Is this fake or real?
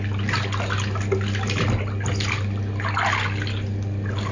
real